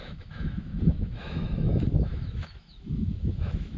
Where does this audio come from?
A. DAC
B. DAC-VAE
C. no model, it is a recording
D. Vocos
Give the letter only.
B